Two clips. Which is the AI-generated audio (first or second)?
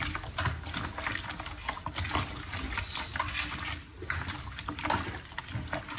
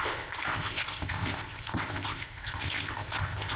second